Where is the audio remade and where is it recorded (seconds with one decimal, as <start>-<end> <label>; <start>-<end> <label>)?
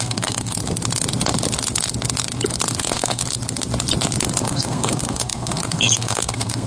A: 0.0-0.6 remade; 0.6-2.8 recorded; 2.8-3.2 remade; 3.2-4.4 recorded; 4.4-6.7 remade